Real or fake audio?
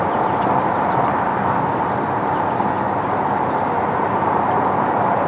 fake